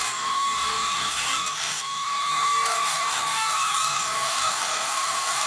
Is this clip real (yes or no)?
no